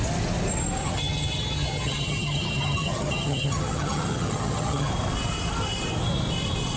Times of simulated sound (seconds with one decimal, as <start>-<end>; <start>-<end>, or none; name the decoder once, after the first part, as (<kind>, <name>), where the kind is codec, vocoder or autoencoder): 0.8-4.9 (vocoder, HiFi-GAN)